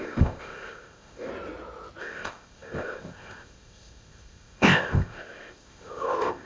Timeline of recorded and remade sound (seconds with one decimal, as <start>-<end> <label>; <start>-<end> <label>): 0.0-1.3 remade; 1.3-2.0 recorded; 2.0-6.5 remade